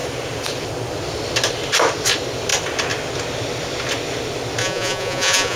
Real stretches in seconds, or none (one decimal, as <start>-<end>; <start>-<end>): 0.0-4.6

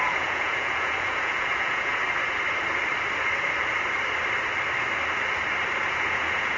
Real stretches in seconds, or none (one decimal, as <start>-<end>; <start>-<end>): 2.0-6.0

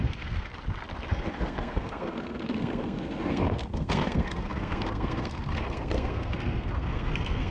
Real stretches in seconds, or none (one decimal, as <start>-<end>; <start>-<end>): 0.5-1.1

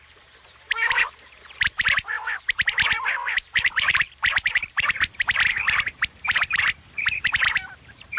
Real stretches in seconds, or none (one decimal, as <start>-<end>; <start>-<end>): none

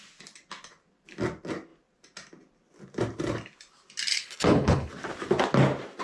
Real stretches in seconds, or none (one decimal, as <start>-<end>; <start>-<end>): 0.0-4.1; 4.9-6.0

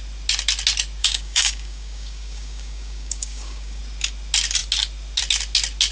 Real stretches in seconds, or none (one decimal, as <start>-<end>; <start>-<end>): 0.0-1.0; 3.8-5.9

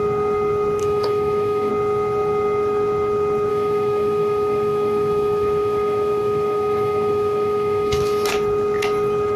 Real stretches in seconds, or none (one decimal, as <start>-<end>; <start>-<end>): 0.0-0.8; 1.7-3.5; 8.3-9.4